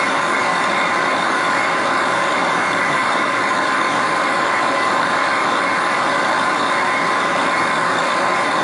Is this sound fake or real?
fake